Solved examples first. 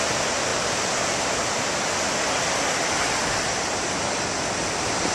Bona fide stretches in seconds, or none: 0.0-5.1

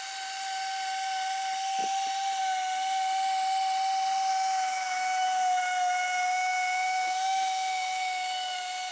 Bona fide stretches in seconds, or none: 0.0-4.3

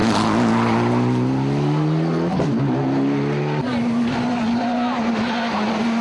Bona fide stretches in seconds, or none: 0.0-6.0

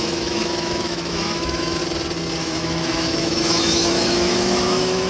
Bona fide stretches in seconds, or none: 1.8-2.4

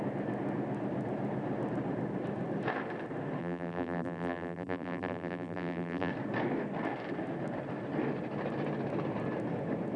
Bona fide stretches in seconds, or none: 0.0-3.4; 6.1-10.0

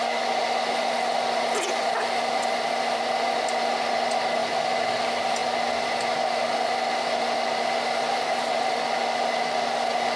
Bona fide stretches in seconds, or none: 0.0-10.2

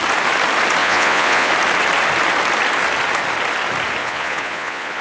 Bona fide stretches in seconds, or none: 0.0-0.8; 1.5-4.0

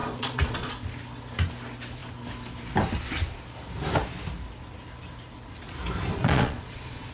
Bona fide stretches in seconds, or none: 0.7-6.1